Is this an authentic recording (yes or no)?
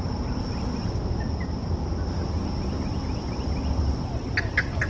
yes